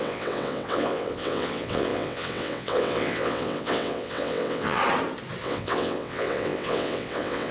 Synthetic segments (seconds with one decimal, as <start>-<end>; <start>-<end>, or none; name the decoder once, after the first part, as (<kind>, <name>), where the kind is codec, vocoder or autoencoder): 0.0-4.8 (vocoder, WaveNeXt); 5.4-7.5